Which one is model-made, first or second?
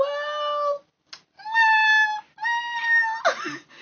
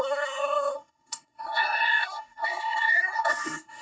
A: second